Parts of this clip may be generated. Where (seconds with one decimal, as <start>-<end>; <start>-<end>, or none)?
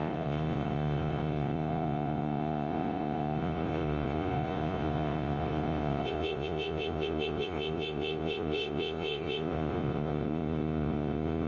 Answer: 0.0-11.5